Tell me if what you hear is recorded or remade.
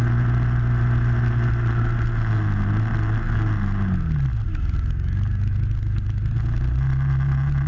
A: recorded